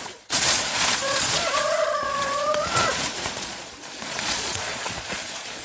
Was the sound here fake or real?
fake